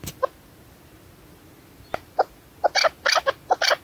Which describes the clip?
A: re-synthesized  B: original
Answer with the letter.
B